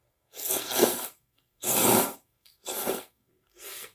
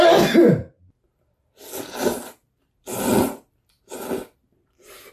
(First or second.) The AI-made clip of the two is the first